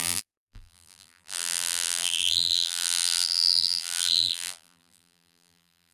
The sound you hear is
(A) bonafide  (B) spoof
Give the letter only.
B